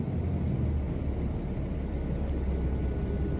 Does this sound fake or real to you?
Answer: real